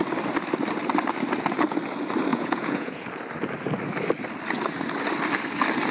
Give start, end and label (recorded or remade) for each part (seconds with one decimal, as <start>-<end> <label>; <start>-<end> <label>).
0.0-2.3 recorded; 2.3-3.0 remade; 3.0-5.9 recorded